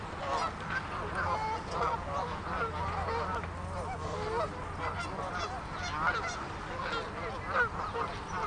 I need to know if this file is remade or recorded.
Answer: recorded